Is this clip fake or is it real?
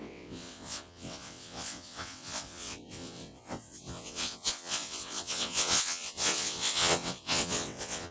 fake